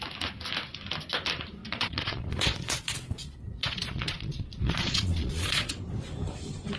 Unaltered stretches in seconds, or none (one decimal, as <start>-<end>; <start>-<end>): 0.0-1.6; 5.7-6.8